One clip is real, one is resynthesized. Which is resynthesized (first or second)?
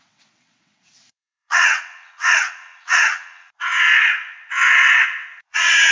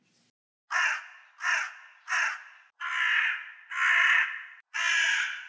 first